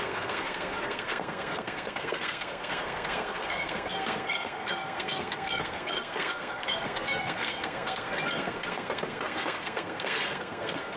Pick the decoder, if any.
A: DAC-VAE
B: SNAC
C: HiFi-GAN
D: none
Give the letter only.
B